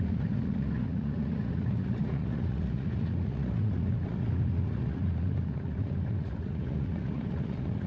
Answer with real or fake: fake